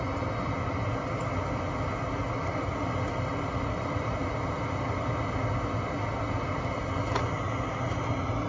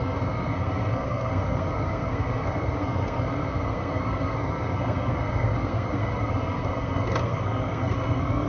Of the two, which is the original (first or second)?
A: first